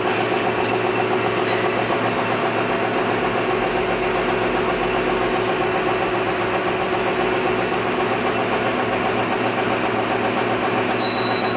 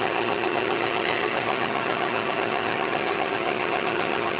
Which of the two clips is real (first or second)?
first